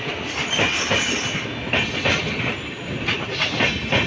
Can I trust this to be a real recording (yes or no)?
yes